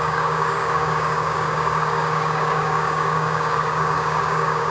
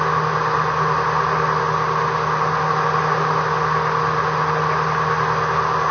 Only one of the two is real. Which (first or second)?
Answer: second